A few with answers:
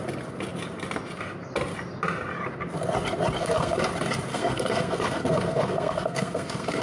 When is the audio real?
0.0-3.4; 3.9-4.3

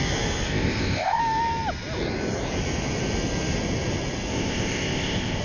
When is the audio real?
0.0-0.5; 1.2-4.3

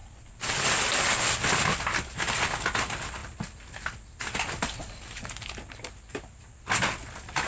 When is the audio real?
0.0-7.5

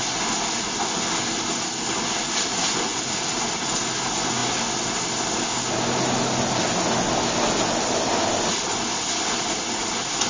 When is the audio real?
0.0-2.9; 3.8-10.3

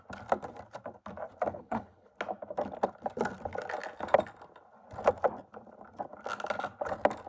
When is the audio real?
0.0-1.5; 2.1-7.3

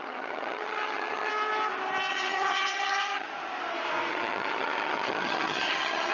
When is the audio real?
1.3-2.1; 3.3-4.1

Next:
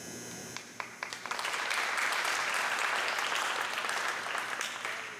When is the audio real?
0.0-0.4; 2.6-5.2